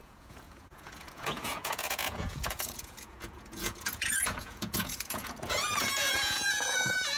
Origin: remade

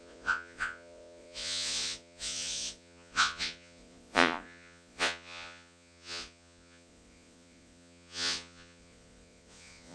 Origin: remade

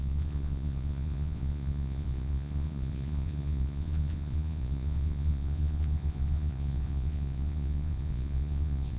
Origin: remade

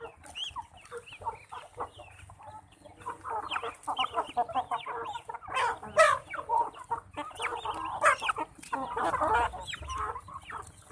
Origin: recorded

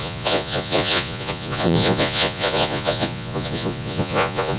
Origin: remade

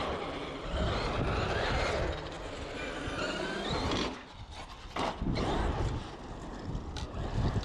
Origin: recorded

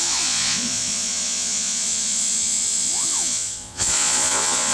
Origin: remade